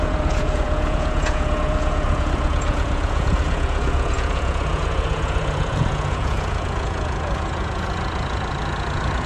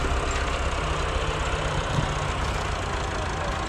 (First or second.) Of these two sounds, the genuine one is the second